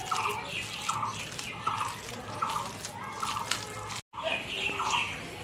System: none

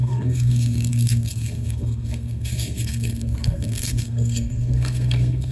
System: codec, SNAC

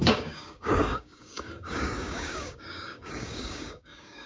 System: codec, DAC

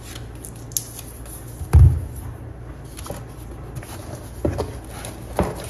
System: none